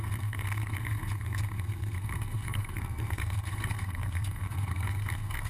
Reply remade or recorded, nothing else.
remade